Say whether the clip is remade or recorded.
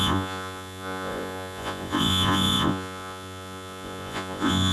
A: remade